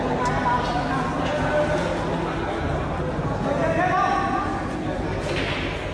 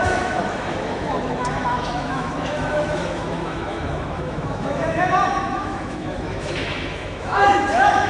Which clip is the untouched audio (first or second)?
first